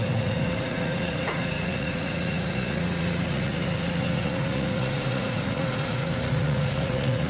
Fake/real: fake